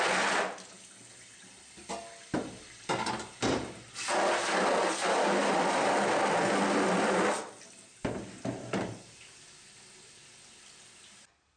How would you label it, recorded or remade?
recorded